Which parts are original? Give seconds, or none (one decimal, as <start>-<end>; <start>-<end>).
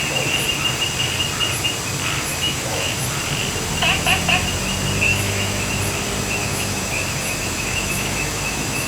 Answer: 0.0-2.3; 3.0-5.1; 5.7-6.4